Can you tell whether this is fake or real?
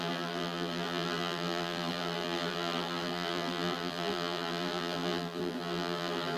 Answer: fake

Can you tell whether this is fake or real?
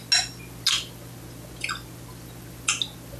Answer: real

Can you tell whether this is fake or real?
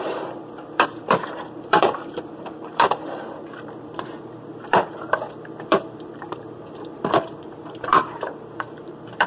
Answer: fake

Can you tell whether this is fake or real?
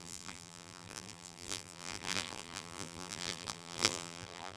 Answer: fake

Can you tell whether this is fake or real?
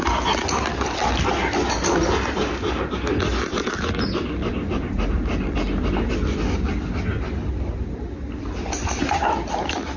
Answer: real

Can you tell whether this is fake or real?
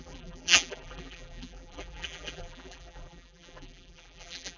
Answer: fake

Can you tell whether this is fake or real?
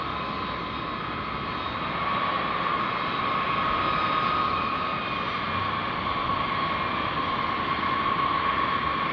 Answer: real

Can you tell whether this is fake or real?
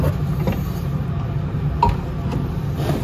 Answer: real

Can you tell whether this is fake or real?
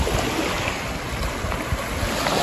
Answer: real